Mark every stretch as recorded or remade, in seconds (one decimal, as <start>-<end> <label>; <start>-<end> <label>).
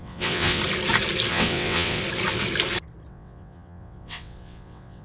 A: 0.0-0.6 remade; 0.6-1.3 recorded; 1.3-2.0 remade; 2.0-3.1 recorded; 3.1-5.0 remade